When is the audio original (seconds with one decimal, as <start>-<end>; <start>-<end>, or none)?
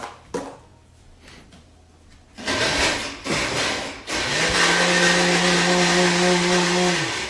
0.0-7.3